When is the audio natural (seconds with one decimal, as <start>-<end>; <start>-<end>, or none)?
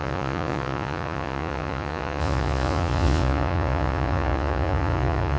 none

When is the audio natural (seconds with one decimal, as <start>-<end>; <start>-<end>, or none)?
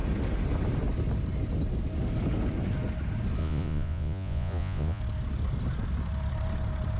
0.0-3.4; 5.0-7.0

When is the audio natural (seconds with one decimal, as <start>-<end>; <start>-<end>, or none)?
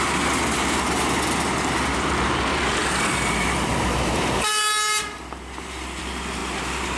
0.0-7.0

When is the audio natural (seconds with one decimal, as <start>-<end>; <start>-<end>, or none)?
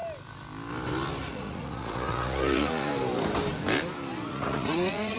0.0-1.3; 2.9-4.3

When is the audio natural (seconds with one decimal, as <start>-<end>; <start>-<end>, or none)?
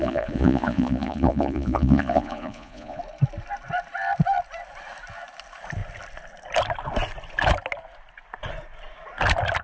3.0-9.6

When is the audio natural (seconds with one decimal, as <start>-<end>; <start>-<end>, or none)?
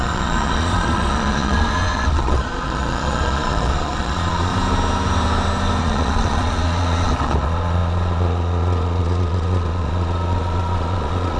4.5-5.8